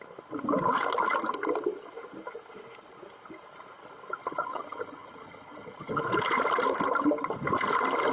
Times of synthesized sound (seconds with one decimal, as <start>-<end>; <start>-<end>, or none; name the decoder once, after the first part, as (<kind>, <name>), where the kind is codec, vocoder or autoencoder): 4.2-6.0 (vocoder, HiFi-GAN)